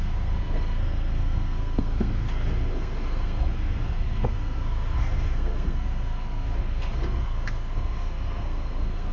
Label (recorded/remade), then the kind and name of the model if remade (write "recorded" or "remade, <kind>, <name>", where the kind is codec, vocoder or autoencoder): remade, codec, SNAC